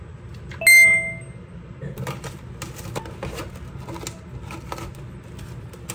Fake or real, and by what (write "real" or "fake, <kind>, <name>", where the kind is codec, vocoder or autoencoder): real